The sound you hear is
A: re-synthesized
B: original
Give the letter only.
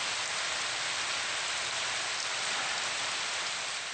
B